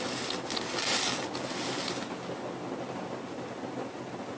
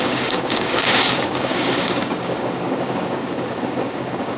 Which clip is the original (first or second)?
first